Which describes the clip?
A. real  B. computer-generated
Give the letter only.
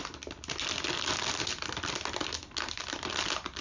A